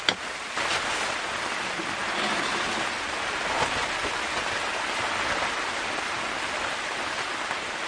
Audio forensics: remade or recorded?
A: recorded